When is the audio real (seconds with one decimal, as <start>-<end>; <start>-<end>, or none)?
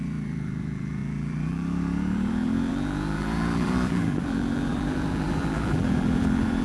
none